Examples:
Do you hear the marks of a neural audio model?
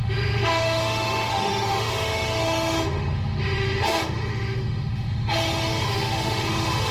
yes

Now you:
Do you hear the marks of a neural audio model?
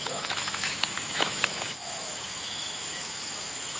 yes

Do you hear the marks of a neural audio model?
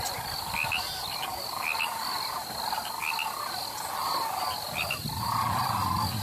no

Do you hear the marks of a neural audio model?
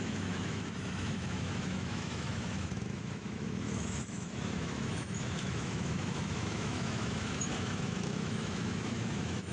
yes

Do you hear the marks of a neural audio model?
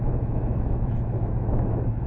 yes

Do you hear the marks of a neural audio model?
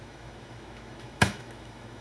yes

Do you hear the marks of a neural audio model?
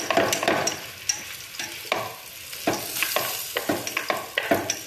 no